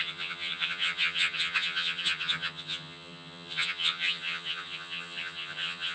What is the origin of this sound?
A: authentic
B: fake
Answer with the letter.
B